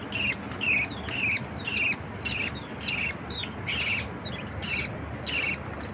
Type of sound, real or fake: real